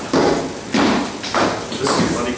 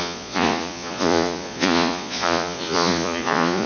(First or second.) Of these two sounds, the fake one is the second